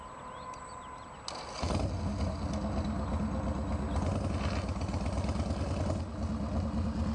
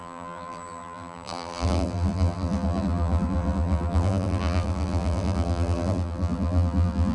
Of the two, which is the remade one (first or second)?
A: second